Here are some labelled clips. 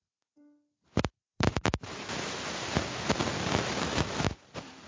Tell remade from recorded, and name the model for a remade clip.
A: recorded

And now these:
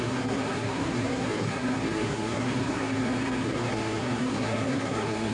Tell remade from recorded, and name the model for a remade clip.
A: remade, codec, SNAC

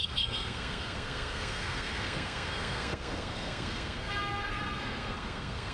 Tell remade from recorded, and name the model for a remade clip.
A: remade, codec, SNAC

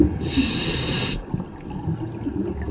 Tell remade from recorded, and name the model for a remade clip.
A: recorded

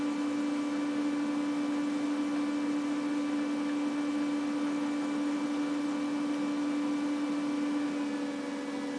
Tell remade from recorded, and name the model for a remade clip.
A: recorded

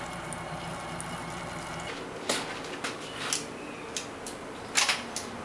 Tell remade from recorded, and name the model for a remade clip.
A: recorded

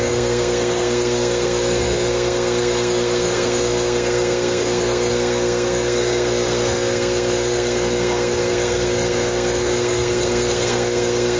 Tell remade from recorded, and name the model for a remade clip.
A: remade, codec, SNAC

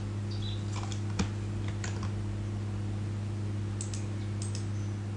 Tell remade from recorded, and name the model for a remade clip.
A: recorded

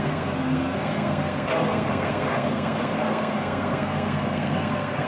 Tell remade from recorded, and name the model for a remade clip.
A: remade, codec, SNAC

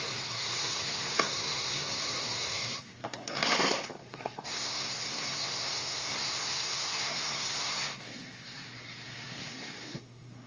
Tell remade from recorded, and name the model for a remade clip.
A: remade, codec, SNAC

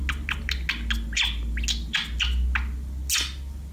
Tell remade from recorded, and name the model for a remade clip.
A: recorded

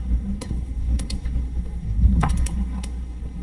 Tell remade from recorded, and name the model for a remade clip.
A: remade, codec, SNAC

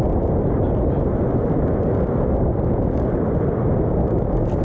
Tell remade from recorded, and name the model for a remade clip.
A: recorded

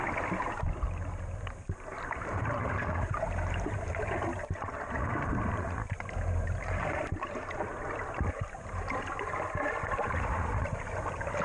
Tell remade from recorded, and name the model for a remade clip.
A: recorded